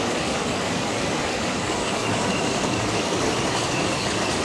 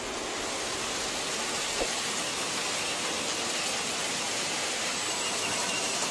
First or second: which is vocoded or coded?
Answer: first